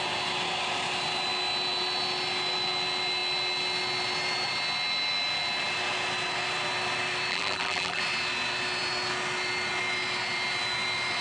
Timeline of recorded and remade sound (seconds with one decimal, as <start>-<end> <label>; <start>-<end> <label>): 0.0-7.3 recorded; 7.3-8.0 remade; 8.0-11.2 recorded